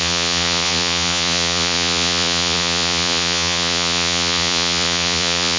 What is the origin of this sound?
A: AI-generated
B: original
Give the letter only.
A